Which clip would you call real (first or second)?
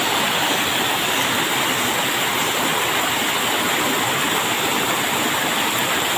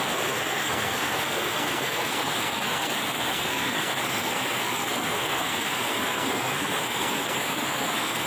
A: first